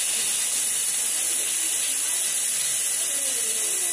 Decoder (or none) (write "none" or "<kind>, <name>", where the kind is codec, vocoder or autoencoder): none